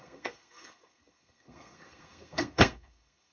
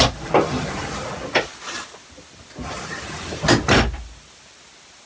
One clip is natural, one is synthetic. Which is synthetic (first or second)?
first